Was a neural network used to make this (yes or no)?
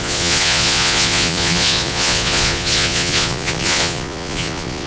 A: yes